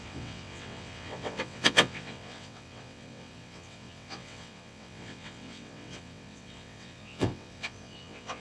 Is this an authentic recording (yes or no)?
no